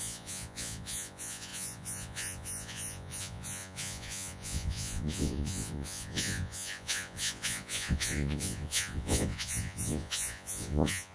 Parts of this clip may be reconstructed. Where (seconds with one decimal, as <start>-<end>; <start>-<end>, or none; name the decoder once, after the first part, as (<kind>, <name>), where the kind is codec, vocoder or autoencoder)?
0.0-11.1 (vocoder, Vocos)